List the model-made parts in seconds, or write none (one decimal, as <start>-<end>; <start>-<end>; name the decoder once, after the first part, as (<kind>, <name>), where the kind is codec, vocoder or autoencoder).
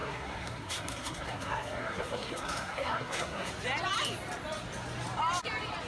0.0-3.5 (codec, SNAC)